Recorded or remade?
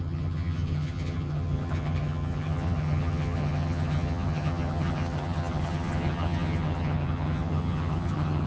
remade